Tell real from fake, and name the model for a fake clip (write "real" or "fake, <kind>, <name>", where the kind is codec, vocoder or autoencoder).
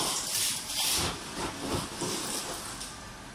real